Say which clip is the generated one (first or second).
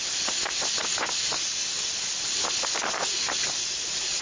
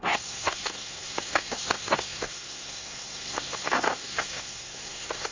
second